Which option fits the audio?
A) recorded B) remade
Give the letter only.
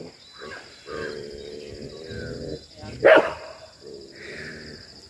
A